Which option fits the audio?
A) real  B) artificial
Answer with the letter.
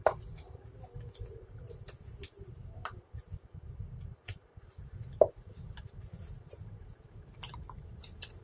A